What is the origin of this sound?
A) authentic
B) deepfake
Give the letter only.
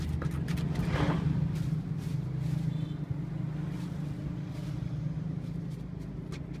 A